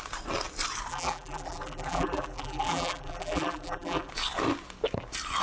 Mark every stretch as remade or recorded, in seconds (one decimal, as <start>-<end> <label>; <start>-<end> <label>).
0.0-0.9 recorded; 0.9-4.1 remade; 4.1-5.4 recorded